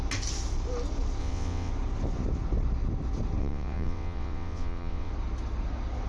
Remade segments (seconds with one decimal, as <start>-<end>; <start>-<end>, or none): 1.2-1.7; 3.4-5.1